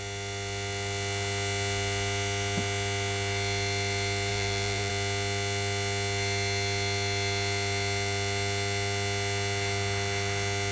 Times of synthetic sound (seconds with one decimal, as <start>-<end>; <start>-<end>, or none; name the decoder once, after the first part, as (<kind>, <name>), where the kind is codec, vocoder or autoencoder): 4.3-4.9 (vocoder, Vocos)